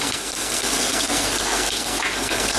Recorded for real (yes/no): no